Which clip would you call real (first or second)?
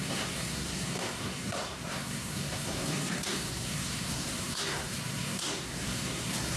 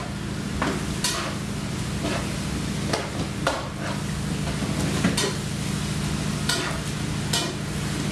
second